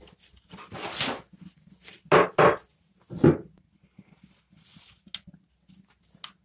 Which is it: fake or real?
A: real